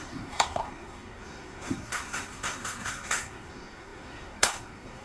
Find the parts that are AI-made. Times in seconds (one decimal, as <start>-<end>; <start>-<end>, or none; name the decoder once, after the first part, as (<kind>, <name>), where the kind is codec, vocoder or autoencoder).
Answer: 0.0-5.0 (codec, SNAC)

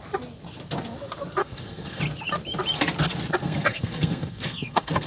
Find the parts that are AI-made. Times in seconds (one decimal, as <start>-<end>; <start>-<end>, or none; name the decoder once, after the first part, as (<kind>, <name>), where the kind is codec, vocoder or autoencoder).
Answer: 1.4-2.0 (codec, SNAC); 3.4-5.1

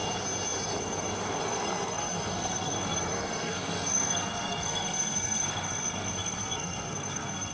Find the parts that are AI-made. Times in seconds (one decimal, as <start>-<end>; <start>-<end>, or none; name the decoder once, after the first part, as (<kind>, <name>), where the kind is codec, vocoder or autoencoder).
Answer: 1.4-7.5 (codec, SNAC)

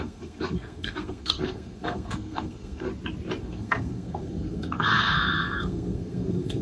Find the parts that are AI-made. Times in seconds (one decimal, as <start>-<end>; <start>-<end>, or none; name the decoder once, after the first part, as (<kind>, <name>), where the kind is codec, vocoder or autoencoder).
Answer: 0.0-2.9 (codec, SNAC); 3.4-6.6